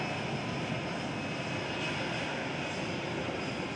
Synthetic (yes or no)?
no